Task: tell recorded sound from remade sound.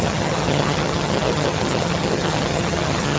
remade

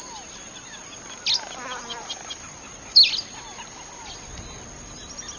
recorded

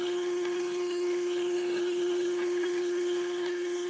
remade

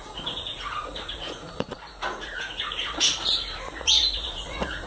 remade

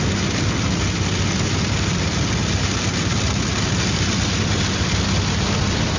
recorded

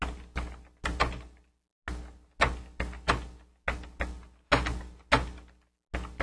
recorded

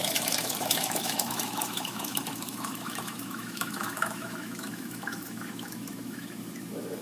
remade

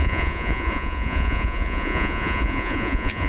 remade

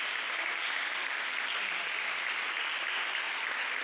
recorded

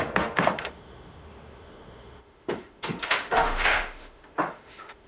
remade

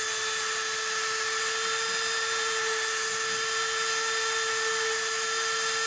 recorded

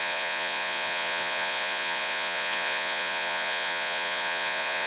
remade